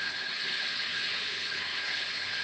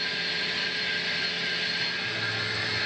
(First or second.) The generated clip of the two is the first